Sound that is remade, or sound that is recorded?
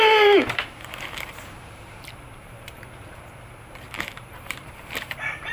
remade